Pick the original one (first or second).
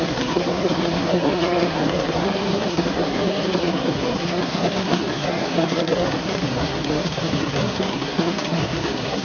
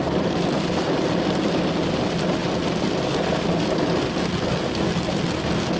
second